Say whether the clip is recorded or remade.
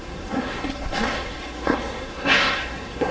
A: remade